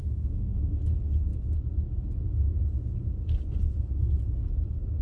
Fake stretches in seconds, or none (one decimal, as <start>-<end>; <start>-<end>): 0.0-0.8